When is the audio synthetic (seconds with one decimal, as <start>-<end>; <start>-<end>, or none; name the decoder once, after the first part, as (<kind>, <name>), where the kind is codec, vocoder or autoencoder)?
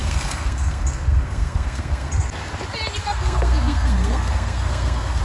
0.0-2.1 (codec, SNAC); 3.0-5.2